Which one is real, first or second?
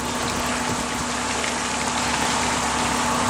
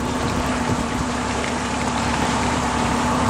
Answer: first